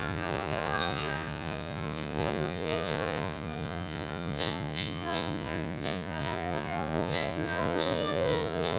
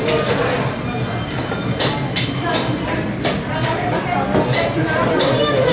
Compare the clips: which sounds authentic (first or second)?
second